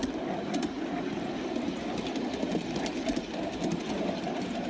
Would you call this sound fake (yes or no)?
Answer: no